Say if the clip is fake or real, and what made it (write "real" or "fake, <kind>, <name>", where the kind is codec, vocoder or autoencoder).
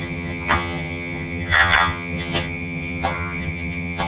fake, vocoder, HiFi-GAN